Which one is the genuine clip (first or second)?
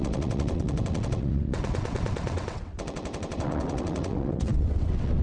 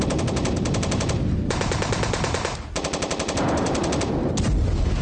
second